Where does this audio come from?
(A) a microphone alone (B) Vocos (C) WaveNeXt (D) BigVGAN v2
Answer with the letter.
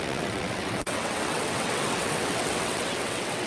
C